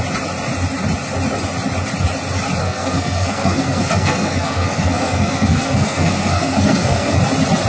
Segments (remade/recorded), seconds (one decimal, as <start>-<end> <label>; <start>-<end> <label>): 0.0-2.6 recorded; 2.6-7.2 remade; 7.2-7.7 recorded